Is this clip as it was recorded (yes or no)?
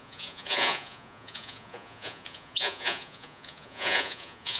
no